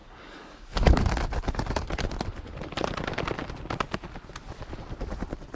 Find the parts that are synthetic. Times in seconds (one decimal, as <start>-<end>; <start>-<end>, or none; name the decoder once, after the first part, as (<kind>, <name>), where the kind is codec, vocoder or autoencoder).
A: 0.0-1.0 (codec, DAC)